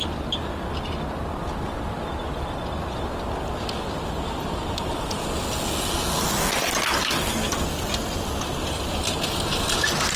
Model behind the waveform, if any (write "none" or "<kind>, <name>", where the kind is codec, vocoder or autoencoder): none